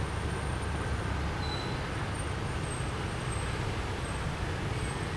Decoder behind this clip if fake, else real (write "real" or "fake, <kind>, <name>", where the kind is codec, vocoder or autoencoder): real